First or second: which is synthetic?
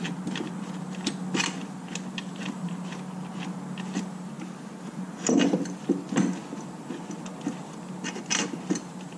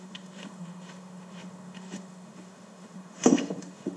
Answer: second